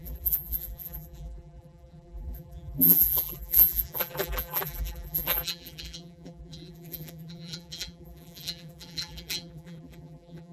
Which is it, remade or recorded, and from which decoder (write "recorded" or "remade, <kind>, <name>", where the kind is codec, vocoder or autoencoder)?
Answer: remade, vocoder, BigVGAN v2